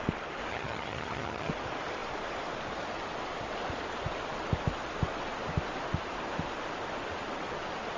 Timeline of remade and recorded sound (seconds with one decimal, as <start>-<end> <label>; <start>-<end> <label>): 0.0-0.5 recorded; 0.5-1.5 remade; 1.5-8.0 recorded